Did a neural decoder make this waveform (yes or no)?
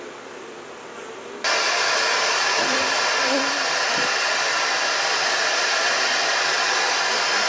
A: no